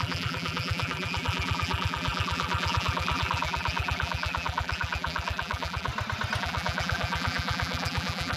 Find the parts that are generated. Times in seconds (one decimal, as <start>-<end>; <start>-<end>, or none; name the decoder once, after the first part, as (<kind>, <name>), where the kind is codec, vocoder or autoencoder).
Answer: 0.0-5.9 (vocoder, BigVGAN v2); 6.4-8.4